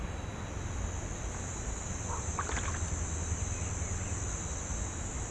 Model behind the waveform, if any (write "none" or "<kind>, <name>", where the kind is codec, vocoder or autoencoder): none